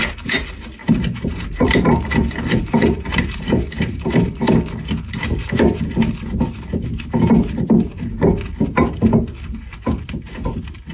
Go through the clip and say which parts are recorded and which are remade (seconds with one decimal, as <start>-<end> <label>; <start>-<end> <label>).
0.0-0.8 recorded; 0.8-4.5 remade; 4.5-10.9 recorded